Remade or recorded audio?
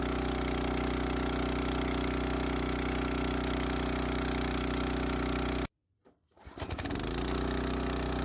recorded